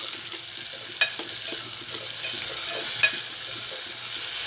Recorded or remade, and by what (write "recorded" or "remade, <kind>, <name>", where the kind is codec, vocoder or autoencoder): recorded